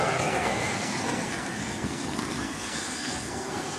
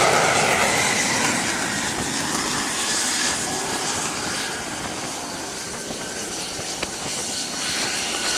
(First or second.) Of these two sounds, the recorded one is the second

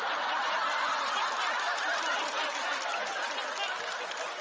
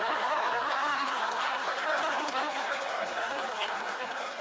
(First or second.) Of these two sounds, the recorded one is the first